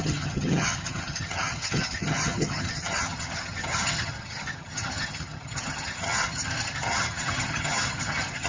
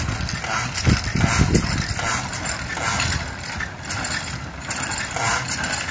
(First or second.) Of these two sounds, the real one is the second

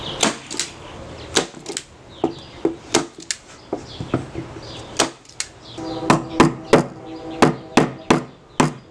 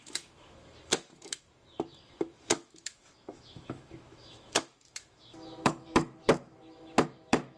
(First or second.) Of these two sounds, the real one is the first